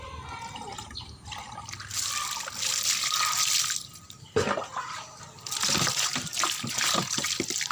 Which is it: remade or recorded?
recorded